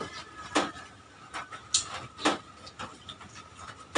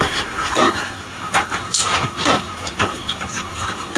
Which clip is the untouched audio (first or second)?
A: first